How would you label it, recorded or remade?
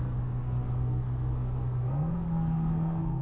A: remade